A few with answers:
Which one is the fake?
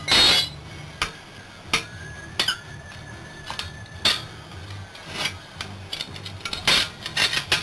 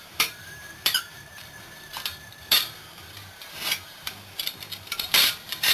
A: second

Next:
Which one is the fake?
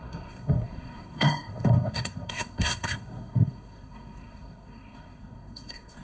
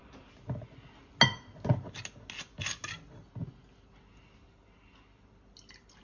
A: first